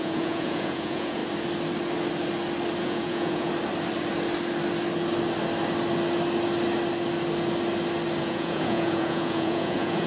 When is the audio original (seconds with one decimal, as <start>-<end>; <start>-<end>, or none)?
1.2-2.8; 3.5-8.2